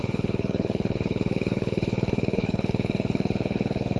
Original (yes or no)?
no